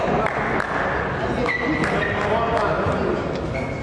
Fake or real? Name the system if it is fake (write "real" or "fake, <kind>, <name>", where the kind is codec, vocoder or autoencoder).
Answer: real